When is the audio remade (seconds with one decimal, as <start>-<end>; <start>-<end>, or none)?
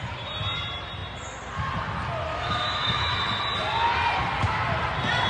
2.3-3.1